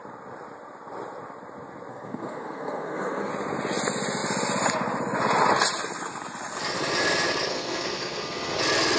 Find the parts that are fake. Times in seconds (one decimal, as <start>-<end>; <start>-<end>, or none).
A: 1.9-3.3; 7.5-8.6